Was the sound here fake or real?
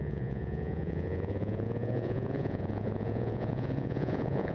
fake